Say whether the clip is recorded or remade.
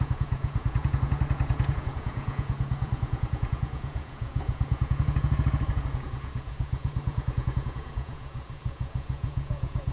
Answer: remade